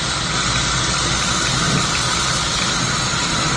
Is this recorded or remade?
recorded